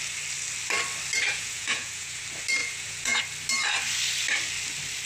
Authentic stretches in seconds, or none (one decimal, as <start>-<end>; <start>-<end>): 0.0-1.3; 2.2-2.6; 3.2-5.1